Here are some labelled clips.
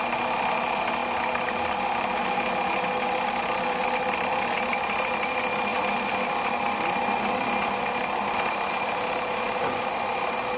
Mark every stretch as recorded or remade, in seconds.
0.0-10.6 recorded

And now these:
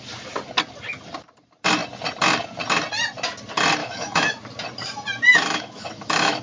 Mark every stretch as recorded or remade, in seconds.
0.0-3.8 recorded; 3.8-4.3 remade; 4.3-5.3 recorded; 5.3-6.4 remade